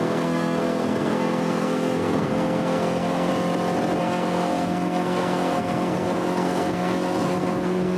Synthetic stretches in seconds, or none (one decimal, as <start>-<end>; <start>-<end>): 0.0-3.3; 4.0-8.0